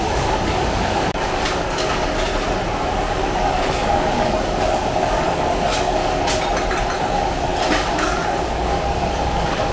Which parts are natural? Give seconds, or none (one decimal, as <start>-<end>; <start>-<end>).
2.3-3.0; 6.0-7.0; 7.5-8.0